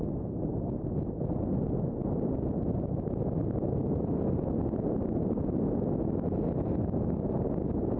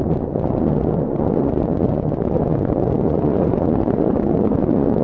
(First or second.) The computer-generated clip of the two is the second